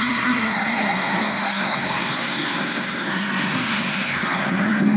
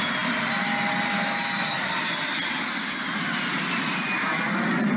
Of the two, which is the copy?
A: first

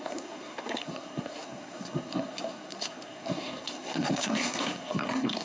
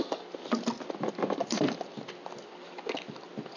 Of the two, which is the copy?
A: first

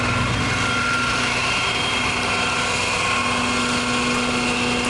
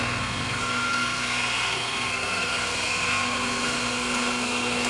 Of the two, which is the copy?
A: second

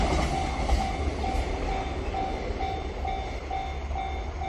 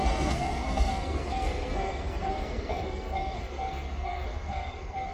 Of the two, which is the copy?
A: second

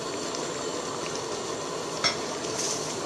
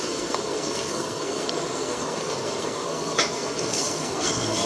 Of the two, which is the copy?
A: second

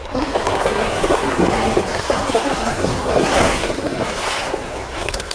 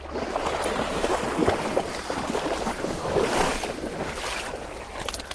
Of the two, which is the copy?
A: first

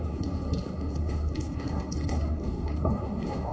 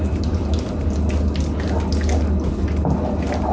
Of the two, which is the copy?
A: first